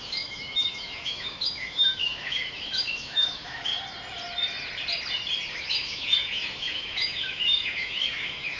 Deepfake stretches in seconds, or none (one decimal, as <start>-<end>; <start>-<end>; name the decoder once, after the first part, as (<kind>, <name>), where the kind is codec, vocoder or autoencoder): 0.0-3.7 (autoencoder, DAC-VAE); 5.5-8.6